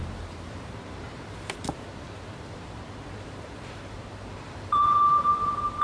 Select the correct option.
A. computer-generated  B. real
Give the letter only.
A